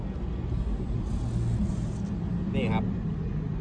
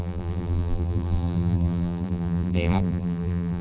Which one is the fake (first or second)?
second